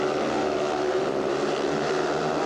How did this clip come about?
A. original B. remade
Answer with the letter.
A